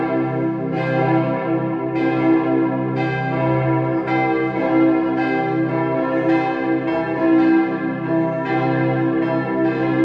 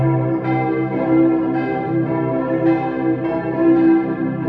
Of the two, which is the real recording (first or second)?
first